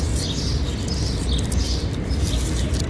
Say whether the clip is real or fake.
real